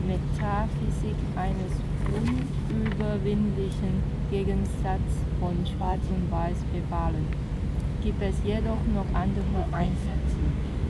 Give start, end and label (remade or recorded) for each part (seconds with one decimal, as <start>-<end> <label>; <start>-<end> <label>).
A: 0.0-2.1 recorded; 2.1-2.7 remade; 2.7-5.6 recorded; 5.6-6.1 remade; 6.1-9.5 recorded; 9.5-10.9 remade